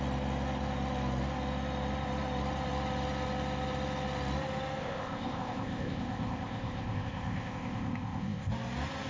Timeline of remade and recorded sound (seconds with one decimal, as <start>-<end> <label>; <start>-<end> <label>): 0.0-4.8 recorded; 4.8-8.5 remade; 8.5-9.1 recorded